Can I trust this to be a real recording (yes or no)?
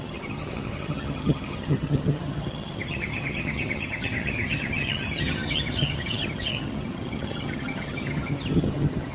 no